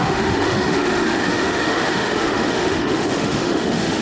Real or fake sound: fake